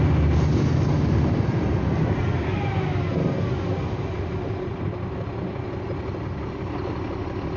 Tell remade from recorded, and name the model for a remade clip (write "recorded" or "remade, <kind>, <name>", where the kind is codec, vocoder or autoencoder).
recorded